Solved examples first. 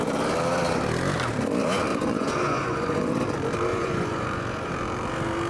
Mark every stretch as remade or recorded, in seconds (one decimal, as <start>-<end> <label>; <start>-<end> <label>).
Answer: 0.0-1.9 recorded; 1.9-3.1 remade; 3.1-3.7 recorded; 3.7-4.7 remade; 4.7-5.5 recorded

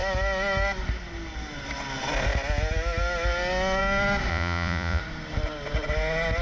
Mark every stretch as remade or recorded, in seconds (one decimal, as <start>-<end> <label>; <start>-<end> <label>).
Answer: 0.0-4.3 recorded; 4.3-5.0 remade; 5.0-6.4 recorded

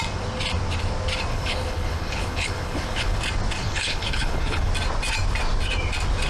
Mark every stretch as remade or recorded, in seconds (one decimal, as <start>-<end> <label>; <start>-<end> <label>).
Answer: 0.0-1.3 recorded; 1.3-3.2 remade; 3.2-3.6 recorded; 3.6-4.7 remade; 4.7-6.3 recorded

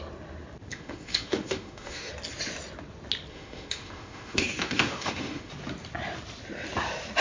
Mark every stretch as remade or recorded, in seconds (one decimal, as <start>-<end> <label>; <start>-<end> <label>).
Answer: 0.0-0.7 recorded; 0.7-2.1 remade; 2.1-3.3 recorded; 3.3-5.5 remade; 5.5-7.2 recorded

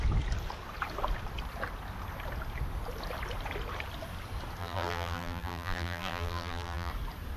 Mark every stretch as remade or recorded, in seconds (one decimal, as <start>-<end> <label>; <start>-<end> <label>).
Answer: 0.0-4.6 recorded; 4.6-6.9 remade; 6.9-7.4 recorded

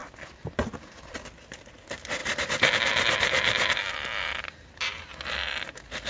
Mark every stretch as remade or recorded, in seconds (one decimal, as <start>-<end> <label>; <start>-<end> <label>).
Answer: 0.0-6.1 recorded

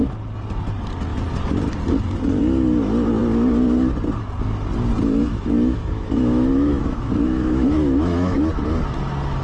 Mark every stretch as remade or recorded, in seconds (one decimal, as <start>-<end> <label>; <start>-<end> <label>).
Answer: 0.0-5.2 recorded; 5.2-8.5 remade; 8.5-9.4 recorded